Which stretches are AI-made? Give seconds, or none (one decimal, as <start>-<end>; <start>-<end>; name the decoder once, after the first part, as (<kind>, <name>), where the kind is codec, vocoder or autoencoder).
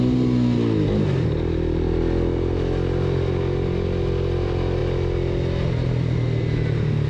none